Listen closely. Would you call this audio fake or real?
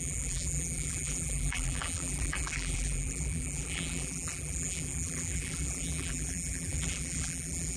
fake